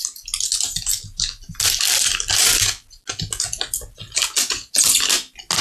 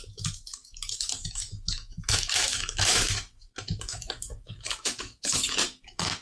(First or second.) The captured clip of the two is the first